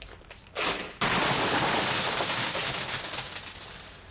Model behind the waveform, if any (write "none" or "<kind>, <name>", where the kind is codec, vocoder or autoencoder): none